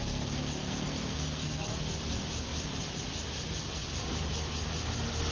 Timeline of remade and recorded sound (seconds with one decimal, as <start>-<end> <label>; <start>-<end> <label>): 0.0-1.7 remade; 1.7-5.3 recorded